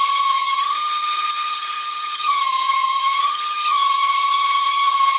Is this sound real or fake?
fake